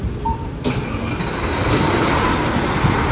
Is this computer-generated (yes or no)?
no